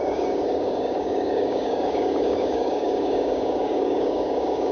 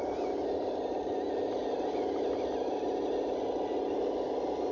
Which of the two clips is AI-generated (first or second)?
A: first